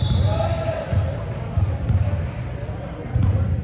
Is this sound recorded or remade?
recorded